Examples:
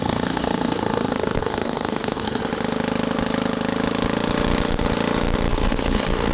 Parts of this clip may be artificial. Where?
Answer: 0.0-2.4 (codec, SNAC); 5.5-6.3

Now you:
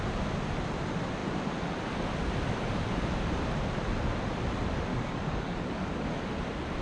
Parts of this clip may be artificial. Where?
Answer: 4.9-6.2 (codec, DAC)

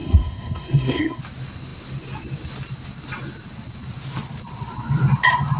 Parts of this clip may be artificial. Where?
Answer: 0.0-1.2 (codec, SNAC)

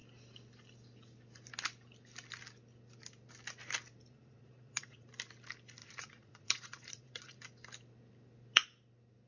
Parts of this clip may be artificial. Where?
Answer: 4.1-5.1 (vocoder, Vocos); 5.8-7.4